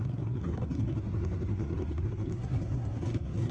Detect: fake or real fake